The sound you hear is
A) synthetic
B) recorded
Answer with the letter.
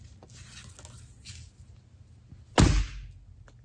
B